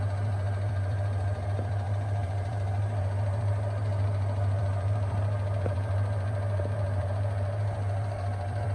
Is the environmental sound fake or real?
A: fake